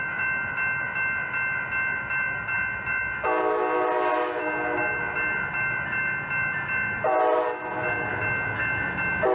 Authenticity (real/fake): real